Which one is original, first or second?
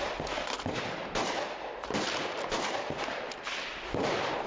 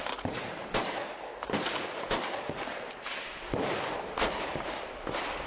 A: second